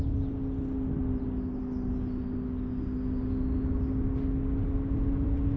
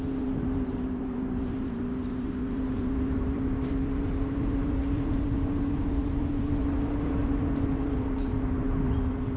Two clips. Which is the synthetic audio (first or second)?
second